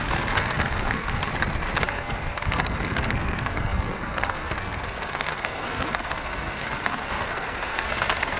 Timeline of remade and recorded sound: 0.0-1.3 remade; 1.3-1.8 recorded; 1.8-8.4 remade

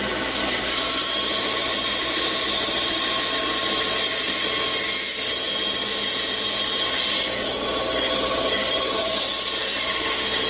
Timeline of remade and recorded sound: 0.0-10.5 recorded

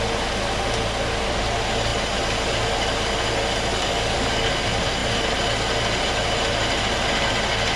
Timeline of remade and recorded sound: 0.0-3.7 recorded; 3.7-4.5 remade; 4.5-7.8 recorded

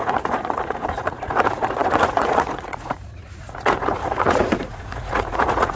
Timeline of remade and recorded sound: 0.0-5.8 remade

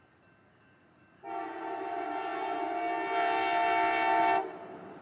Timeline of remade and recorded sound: 0.0-5.0 recorded

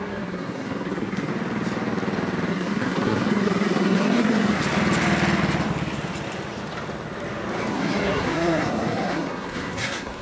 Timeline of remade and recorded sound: 0.0-1.3 remade; 1.3-2.5 recorded; 2.5-4.6 remade; 4.6-7.7 recorded; 7.7-10.2 remade